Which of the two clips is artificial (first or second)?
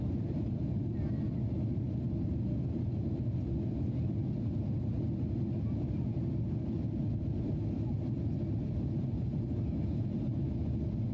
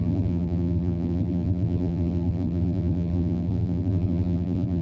second